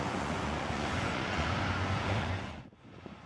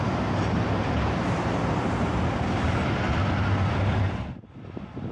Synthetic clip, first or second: first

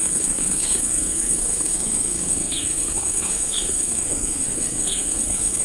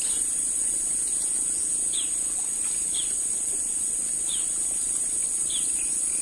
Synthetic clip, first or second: first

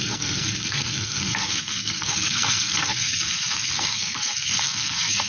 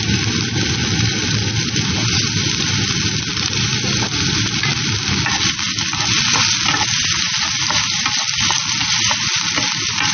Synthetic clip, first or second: first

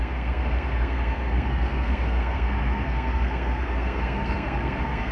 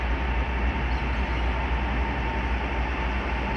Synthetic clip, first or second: first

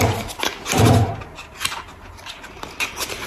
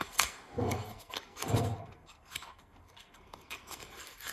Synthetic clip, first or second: second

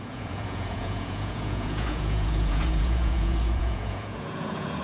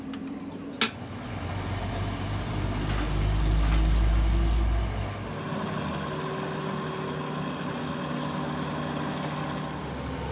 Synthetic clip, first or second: first